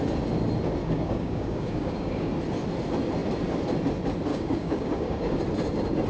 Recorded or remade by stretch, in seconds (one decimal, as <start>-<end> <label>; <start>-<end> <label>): 0.0-0.8 recorded; 0.8-2.3 remade; 2.3-4.3 recorded; 4.3-5.4 remade; 5.4-6.1 recorded